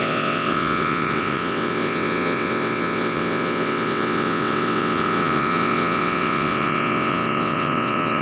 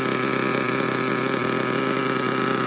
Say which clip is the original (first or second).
second